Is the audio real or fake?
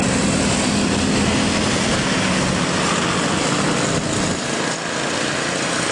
real